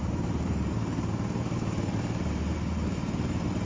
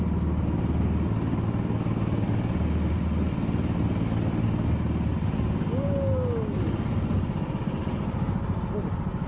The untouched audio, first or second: second